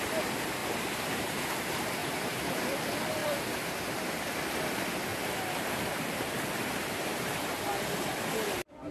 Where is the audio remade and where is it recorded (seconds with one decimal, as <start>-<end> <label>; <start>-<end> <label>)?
0.0-0.6 recorded; 0.6-1.4 remade; 1.4-2.0 recorded; 2.0-2.6 remade; 2.6-3.2 recorded; 3.2-4.1 remade; 4.1-5.1 recorded; 5.1-7.6 remade; 7.6-8.9 recorded